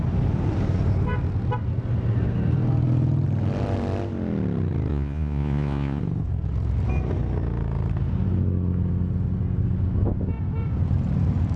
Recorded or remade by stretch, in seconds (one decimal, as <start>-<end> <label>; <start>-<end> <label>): 0.0-4.9 recorded; 4.9-6.0 remade; 6.0-11.6 recorded